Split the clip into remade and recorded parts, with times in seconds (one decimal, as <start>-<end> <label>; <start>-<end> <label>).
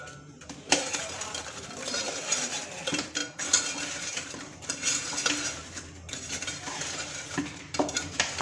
0.0-3.2 remade; 3.2-3.8 recorded; 3.8-8.4 remade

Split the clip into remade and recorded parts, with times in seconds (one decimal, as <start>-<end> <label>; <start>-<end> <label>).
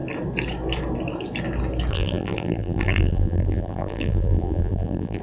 0.0-1.9 recorded; 1.9-5.2 remade